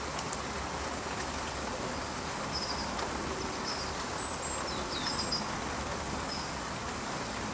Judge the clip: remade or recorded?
recorded